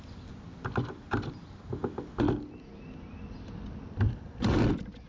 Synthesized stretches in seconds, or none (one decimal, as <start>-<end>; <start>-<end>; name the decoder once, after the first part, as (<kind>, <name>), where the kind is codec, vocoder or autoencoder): none